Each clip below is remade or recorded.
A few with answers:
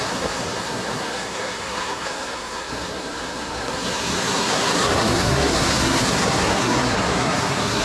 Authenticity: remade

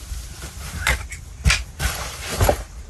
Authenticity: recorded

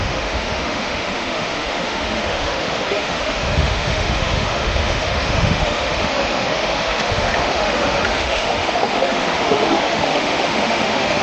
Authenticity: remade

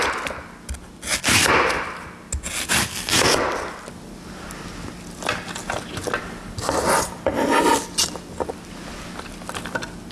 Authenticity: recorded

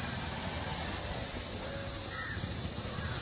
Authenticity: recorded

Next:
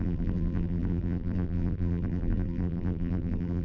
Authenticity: remade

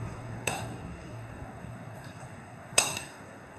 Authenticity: remade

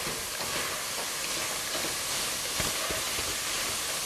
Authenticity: recorded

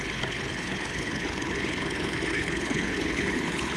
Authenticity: remade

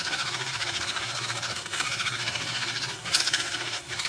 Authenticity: remade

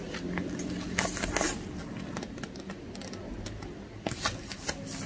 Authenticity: recorded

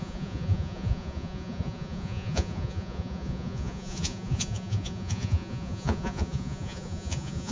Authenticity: remade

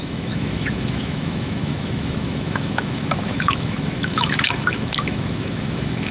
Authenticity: remade